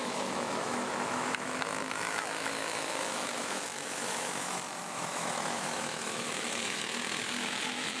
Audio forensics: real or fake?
fake